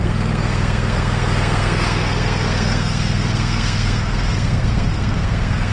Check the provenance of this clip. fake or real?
fake